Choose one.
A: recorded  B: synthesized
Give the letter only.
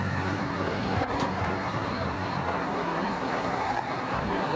B